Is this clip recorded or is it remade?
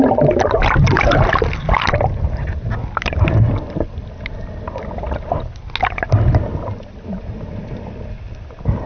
recorded